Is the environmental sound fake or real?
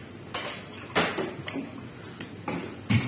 real